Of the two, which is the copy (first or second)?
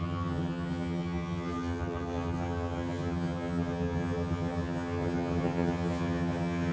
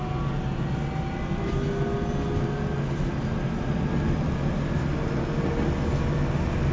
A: first